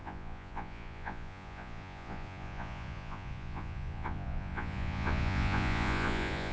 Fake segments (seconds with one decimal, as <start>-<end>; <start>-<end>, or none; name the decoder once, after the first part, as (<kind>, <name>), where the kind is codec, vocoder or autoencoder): 0.0-6.5 (vocoder, Vocos)